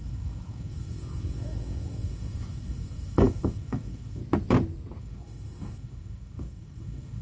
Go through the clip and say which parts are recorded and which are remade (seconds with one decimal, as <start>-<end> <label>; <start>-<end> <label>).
0.0-4.2 remade; 4.2-5.0 recorded; 5.0-7.2 remade